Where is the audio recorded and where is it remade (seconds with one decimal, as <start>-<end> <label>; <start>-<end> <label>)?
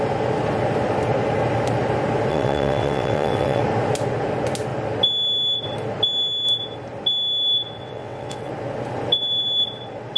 0.0-2.3 recorded; 2.3-3.6 remade; 3.6-7.8 recorded; 7.8-8.5 remade; 8.5-10.2 recorded